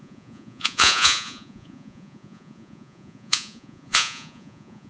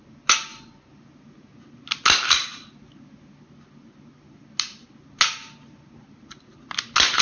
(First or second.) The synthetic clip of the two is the first